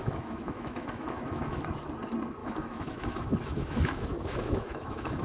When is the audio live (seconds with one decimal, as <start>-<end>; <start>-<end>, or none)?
1.7-2.4